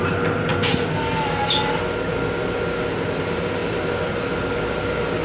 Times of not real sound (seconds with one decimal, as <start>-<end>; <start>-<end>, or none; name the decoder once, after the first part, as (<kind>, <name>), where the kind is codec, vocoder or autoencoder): none